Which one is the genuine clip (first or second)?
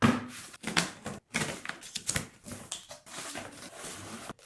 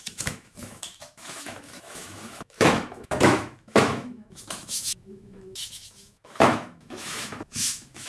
first